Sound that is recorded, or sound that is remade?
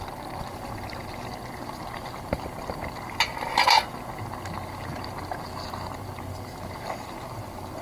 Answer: recorded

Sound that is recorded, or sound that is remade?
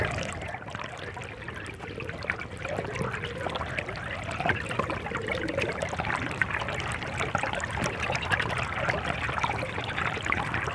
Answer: recorded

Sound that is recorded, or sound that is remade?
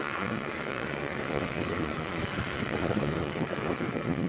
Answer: remade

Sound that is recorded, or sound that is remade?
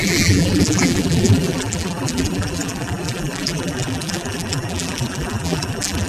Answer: remade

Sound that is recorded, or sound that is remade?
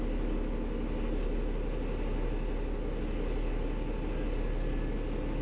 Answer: recorded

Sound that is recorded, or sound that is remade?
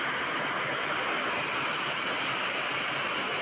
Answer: recorded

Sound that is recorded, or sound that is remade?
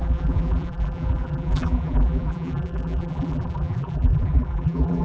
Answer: remade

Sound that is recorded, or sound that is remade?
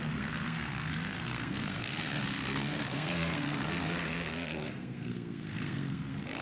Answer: remade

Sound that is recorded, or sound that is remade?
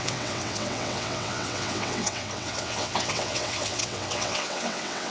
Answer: remade